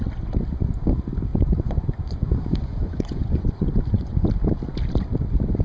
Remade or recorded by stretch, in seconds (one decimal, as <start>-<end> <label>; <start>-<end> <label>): 0.0-1.3 recorded; 1.3-4.1 remade; 4.1-5.6 recorded